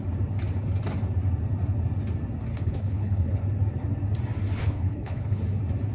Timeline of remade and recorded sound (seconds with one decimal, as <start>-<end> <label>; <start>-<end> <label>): 0.0-2.5 recorded; 2.5-3.4 remade; 3.4-4.6 recorded; 4.6-5.4 remade; 5.4-5.9 recorded